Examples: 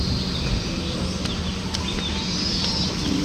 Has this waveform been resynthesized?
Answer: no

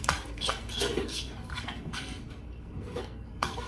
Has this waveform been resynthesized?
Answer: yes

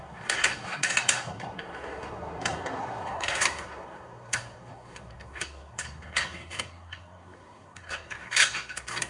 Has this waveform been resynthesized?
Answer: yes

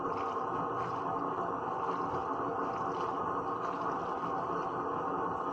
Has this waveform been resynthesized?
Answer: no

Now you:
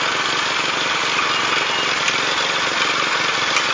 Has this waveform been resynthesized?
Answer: no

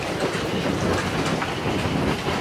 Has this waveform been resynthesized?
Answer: no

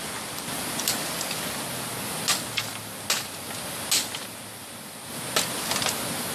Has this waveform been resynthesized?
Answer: no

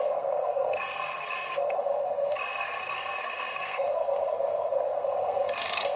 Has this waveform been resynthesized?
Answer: yes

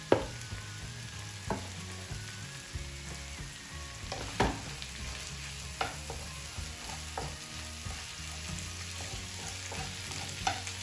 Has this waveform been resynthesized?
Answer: no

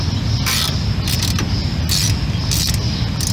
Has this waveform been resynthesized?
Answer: no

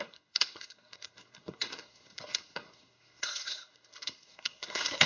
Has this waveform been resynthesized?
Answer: yes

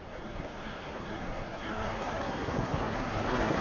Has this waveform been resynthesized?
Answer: yes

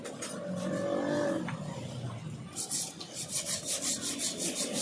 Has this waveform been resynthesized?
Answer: no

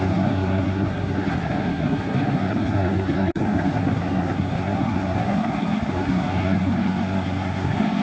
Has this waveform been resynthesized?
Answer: yes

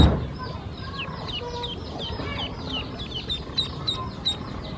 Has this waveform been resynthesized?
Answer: no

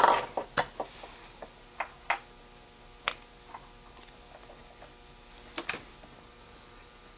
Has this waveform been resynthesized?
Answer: no